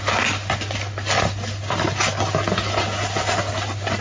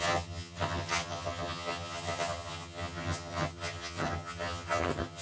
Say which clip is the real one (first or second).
first